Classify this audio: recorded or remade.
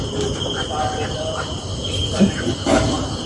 recorded